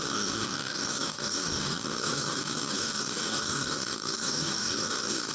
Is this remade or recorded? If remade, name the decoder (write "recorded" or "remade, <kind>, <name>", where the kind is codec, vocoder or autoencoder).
remade, codec, DAC